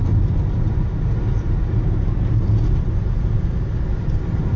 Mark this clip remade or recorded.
recorded